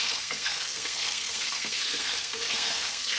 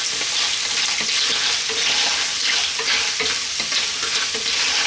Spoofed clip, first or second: first